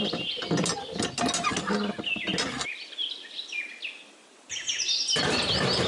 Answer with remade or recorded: recorded